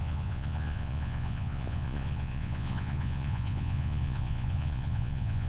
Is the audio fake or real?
fake